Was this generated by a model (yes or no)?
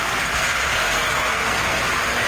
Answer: yes